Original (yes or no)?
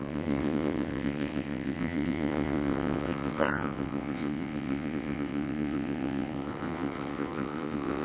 no